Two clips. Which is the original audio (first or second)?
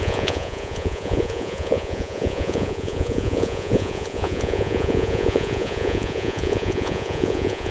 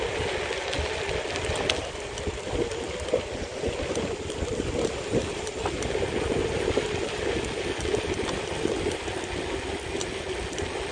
second